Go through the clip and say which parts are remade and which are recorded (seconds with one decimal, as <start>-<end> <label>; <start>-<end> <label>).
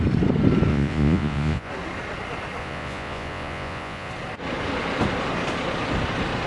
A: 0.0-0.7 recorded; 0.7-1.7 remade; 1.7-2.6 recorded; 2.6-4.1 remade; 4.1-6.5 recorded